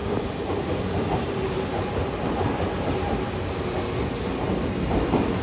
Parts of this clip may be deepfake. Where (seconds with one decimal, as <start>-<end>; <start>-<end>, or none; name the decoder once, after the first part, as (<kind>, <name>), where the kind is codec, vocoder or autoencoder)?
1.0-2.0 (vocoder, BigVGAN v2)